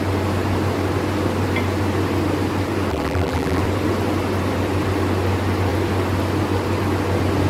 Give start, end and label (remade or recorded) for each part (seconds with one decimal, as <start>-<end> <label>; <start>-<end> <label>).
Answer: 0.0-2.9 recorded; 2.9-3.6 remade; 3.6-7.5 recorded